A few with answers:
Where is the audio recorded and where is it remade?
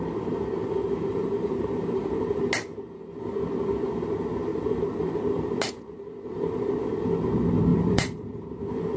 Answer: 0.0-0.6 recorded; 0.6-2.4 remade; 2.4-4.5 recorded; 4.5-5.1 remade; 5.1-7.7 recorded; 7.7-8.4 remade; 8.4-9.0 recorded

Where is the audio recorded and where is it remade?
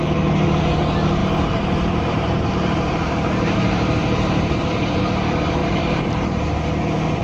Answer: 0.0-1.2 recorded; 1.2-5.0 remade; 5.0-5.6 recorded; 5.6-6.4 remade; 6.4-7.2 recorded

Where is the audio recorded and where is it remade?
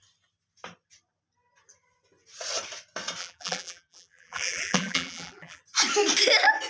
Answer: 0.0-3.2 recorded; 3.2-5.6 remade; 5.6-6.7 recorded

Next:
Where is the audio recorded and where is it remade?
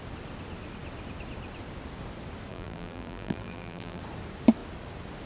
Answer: 0.0-2.5 recorded; 2.5-4.0 remade; 4.0-5.3 recorded